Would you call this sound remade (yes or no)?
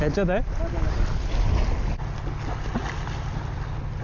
no